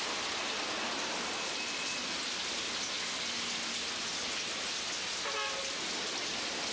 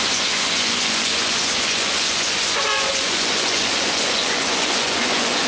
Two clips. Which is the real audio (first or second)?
first